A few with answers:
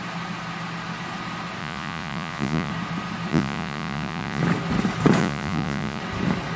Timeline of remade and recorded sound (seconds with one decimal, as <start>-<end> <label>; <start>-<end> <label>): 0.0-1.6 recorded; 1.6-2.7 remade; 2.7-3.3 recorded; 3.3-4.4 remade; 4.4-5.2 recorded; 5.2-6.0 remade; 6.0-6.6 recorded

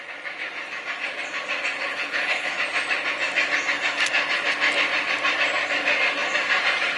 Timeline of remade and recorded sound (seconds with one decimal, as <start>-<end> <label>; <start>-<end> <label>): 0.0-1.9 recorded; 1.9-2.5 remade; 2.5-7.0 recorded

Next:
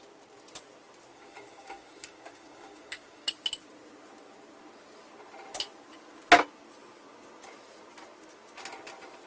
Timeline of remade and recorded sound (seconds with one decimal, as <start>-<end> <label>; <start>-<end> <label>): 0.0-1.1 recorded; 1.1-3.3 remade; 3.3-9.3 recorded

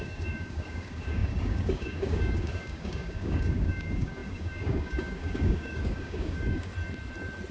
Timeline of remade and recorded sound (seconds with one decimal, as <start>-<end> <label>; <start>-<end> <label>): 0.0-6.7 remade; 6.7-7.5 recorded

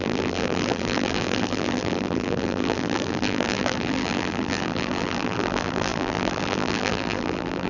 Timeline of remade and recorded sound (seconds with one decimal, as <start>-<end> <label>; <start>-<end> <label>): 0.0-7.7 remade

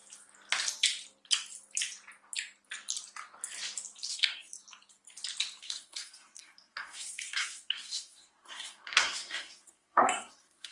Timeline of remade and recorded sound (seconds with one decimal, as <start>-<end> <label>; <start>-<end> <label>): 0.0-4.1 recorded; 4.1-4.5 remade; 4.5-5.6 recorded; 5.6-10.7 remade

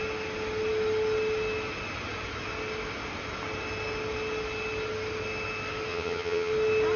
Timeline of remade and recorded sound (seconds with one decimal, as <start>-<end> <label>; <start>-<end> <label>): 0.0-5.9 recorded; 5.9-6.5 remade; 6.5-7.0 recorded